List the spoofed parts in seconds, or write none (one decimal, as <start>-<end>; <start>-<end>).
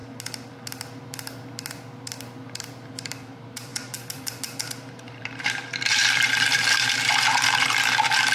2.6-8.3